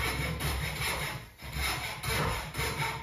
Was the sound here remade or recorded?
remade